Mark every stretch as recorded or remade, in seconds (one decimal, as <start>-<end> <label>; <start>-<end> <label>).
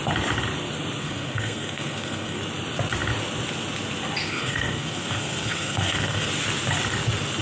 0.0-1.0 recorded; 1.0-2.4 remade; 2.4-4.2 recorded; 4.2-6.3 remade; 6.3-7.4 recorded